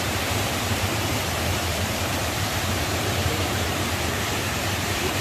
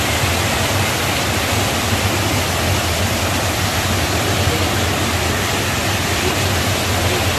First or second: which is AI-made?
first